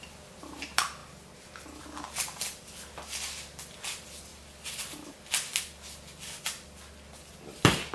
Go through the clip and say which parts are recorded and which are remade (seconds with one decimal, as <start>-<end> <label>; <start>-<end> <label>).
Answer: 0.0-4.3 recorded; 4.3-4.9 remade; 4.9-7.9 recorded